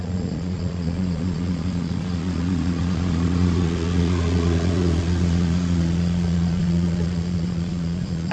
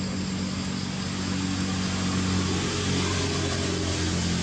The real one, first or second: second